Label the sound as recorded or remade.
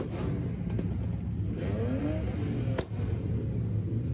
recorded